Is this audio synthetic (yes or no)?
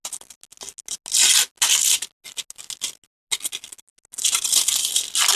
no